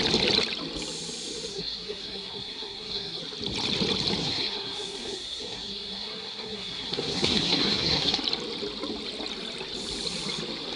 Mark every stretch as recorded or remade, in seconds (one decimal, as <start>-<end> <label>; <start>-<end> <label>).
0.0-1.5 recorded; 1.5-3.2 remade; 3.2-4.2 recorded; 4.2-8.2 remade; 8.2-10.8 recorded